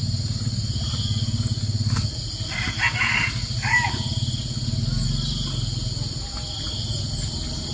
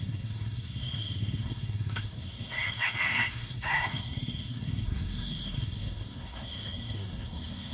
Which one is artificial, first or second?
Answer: second